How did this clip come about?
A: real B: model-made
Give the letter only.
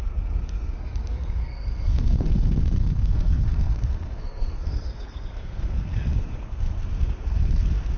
B